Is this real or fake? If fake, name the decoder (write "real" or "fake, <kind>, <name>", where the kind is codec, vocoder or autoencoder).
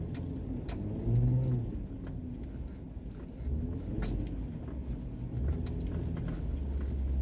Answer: real